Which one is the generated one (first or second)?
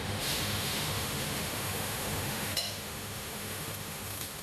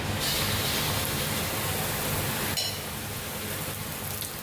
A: first